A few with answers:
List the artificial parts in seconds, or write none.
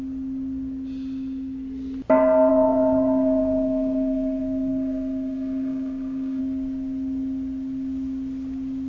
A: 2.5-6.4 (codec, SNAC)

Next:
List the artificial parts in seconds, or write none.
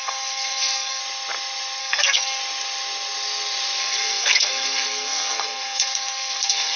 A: 0.0-1.0 (codec, SNAC); 1.8-2.4; 3.8-6.8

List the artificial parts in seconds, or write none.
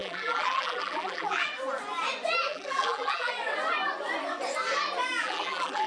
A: 0.0-1.5 (vocoder, BigVGAN v2); 2.5-3.3; 5.2-5.9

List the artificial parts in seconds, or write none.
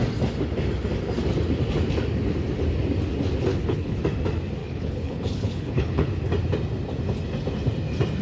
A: 3.5-4.0 (codec, HILCodec); 4.6-6.1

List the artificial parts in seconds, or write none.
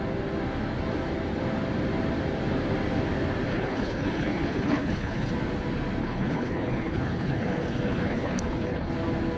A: 3.5-5.3 (codec, HILCodec); 6.0-8.9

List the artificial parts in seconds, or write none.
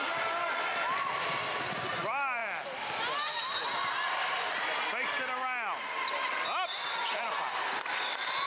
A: none